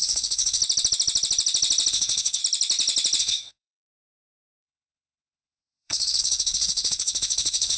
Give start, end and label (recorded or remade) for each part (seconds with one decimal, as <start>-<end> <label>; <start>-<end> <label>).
0.0-0.6 remade; 0.6-1.9 recorded; 1.9-2.4 remade; 2.4-3.2 recorded; 3.2-7.8 remade